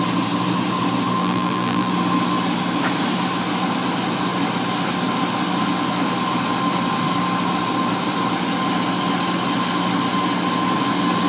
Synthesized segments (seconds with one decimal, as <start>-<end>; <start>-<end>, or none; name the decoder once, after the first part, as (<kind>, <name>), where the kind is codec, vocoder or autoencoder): 1.2-1.9 (vocoder, BigVGAN v2)